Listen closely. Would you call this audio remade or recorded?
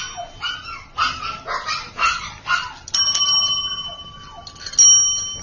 recorded